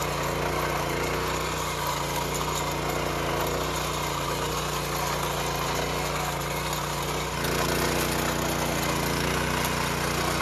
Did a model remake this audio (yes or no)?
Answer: no